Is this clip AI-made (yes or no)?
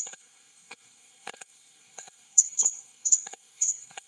yes